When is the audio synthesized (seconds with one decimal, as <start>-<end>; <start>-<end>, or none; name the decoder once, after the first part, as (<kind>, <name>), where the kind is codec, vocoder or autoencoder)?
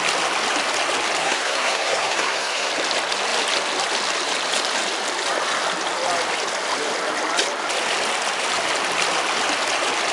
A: 1.2-2.7 (codec, SNAC)